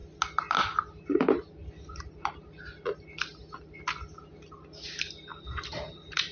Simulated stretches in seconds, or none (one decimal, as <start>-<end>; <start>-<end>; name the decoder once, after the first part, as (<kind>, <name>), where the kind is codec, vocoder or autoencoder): none

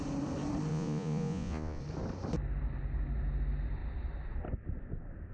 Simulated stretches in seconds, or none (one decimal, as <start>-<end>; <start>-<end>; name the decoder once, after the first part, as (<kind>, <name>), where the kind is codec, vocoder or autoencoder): 0.7-1.8 (vocoder, Vocos)

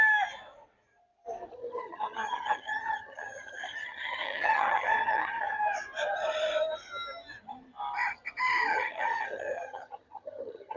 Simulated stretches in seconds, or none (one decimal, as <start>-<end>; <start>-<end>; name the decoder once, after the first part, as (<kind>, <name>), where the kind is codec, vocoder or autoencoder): 1.5-5.6 (vocoder, HiFi-GAN); 8.7-10.8

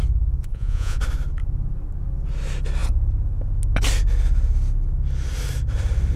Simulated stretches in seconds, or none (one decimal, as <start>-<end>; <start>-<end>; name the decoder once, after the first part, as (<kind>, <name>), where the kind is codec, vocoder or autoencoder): 0.4-1.0 (vocoder, Vocos)

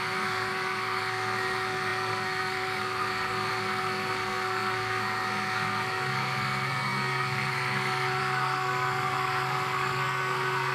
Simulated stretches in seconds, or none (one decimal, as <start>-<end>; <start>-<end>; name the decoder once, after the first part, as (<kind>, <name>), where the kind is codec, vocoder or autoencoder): 0.0-10.7 (codec, SNAC)

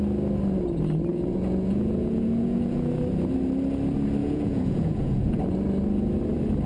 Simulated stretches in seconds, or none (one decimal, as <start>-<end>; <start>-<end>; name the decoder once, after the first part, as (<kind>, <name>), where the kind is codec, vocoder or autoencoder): 1.1-2.9 (vocoder, Vocos); 4.2-5.4

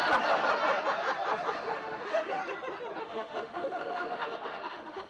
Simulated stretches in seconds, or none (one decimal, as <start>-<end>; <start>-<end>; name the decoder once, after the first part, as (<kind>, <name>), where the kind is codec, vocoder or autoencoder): 1.5-2.4 (autoencoder, DAC-VAE); 3.0-5.1